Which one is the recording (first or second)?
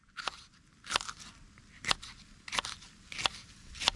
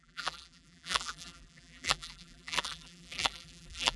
first